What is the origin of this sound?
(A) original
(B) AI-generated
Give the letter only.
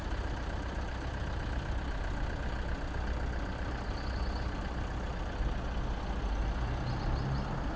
A